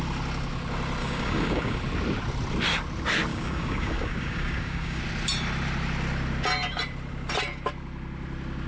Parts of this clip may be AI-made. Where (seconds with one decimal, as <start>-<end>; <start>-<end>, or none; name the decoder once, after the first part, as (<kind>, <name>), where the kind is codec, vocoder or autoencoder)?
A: 1.0-1.8 (codec, DAC); 3.3-5.0